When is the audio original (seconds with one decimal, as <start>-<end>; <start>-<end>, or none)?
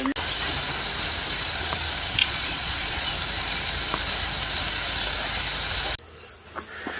0.0-2.2; 3.1-7.0